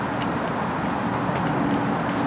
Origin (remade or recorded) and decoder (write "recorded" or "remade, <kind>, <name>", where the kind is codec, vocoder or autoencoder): recorded